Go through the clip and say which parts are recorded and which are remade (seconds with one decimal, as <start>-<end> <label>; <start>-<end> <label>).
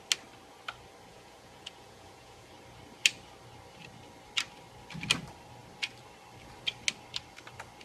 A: 0.0-1.1 recorded; 1.1-2.5 remade; 2.5-7.8 recorded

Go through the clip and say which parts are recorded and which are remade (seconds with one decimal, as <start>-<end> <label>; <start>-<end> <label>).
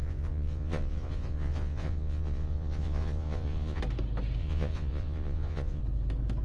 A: 0.0-3.8 remade; 3.8-4.4 recorded; 4.4-5.8 remade; 5.8-6.4 recorded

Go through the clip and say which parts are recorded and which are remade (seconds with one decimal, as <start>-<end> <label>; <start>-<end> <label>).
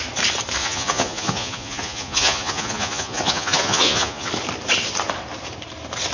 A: 0.0-0.6 recorded; 0.6-4.3 remade; 4.3-6.1 recorded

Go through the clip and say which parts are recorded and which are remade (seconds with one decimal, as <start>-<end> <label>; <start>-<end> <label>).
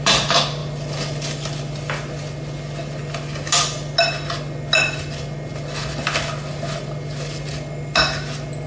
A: 0.0-8.7 recorded